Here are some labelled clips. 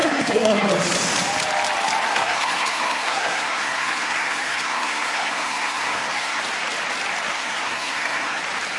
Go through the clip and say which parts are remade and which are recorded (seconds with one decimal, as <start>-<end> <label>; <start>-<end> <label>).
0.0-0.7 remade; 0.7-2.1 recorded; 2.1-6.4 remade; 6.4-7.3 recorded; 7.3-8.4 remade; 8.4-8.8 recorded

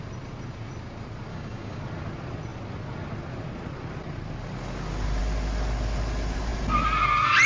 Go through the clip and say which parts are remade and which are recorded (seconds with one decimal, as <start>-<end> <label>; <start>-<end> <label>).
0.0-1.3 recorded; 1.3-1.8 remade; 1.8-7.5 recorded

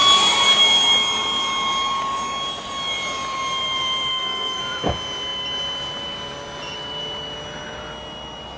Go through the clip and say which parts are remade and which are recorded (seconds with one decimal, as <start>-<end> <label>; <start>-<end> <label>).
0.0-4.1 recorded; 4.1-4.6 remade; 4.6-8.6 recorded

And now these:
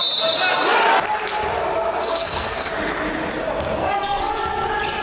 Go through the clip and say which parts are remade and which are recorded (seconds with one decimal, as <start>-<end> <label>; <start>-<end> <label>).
0.0-2.0 recorded; 2.0-2.7 remade; 2.7-3.8 recorded; 3.8-4.4 remade; 4.4-5.0 recorded